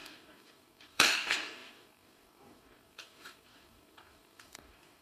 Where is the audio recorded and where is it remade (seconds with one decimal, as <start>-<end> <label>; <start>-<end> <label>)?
0.0-5.0 remade

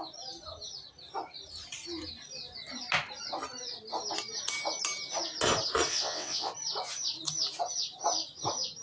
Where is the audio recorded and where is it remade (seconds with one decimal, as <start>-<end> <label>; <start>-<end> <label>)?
0.0-5.9 recorded; 5.9-6.5 remade; 6.5-8.8 recorded

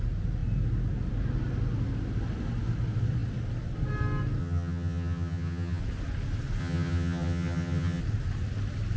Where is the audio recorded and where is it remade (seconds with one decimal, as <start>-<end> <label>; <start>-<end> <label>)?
0.0-4.4 recorded; 4.4-5.8 remade; 5.8-6.6 recorded; 6.6-8.0 remade; 8.0-9.0 recorded

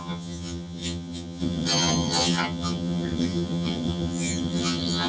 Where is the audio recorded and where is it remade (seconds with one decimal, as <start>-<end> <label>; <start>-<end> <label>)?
0.0-5.1 remade

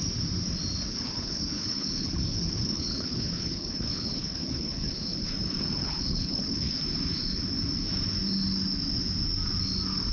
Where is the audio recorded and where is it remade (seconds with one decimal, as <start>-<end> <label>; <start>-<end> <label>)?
0.0-0.9 recorded; 0.9-5.3 remade; 5.3-5.8 recorded; 5.8-6.8 remade; 6.8-10.1 recorded

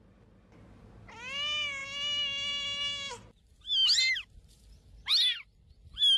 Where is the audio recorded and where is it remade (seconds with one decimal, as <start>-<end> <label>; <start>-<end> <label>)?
0.0-6.2 recorded